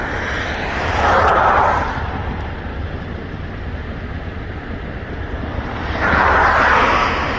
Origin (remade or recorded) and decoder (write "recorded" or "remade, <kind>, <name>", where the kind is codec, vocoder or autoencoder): recorded